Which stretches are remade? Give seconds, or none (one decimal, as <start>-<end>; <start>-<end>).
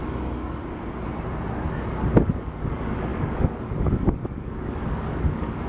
0.0-0.6; 2.2-5.7